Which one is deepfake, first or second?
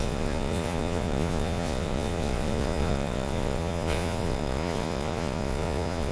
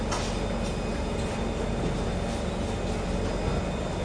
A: first